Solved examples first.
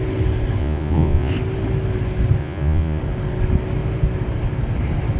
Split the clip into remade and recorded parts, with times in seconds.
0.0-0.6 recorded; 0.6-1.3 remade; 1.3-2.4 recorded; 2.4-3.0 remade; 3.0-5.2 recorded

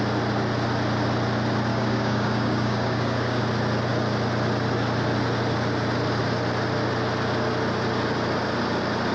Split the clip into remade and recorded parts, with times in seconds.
0.0-1.7 recorded; 1.7-3.4 remade; 3.4-9.1 recorded

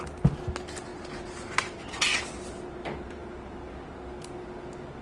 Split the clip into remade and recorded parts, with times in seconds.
0.0-5.0 recorded

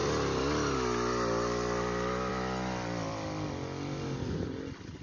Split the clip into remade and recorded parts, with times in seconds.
0.0-5.0 recorded

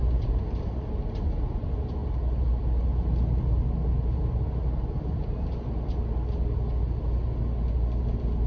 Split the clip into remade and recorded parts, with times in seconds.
0.0-8.5 recorded

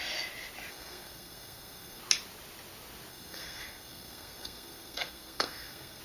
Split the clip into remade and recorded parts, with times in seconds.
0.0-0.7 recorded; 0.7-2.0 remade; 2.0-3.1 recorded; 3.1-6.0 remade